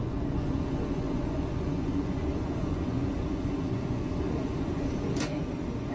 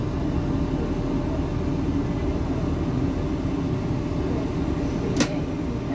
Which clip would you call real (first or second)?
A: second